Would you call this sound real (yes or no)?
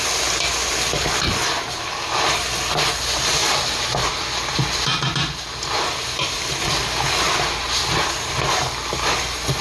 yes